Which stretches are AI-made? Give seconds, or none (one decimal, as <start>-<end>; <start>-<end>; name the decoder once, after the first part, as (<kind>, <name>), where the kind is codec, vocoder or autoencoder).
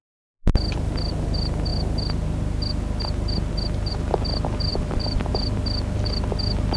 4.7-5.3 (vocoder, BigVGAN v2)